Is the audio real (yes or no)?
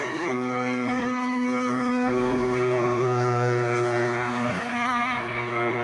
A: no